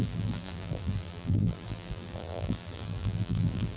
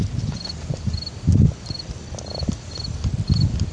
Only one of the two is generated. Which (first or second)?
first